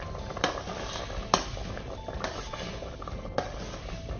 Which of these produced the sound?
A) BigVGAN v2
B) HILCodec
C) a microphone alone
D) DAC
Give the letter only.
C